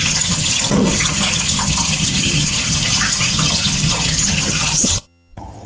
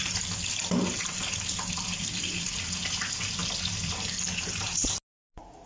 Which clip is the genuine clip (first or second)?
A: second